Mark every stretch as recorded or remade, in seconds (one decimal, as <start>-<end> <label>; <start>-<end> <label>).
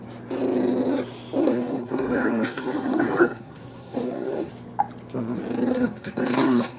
0.0-1.4 recorded; 1.4-4.5 remade; 4.5-5.7 recorded; 5.7-6.8 remade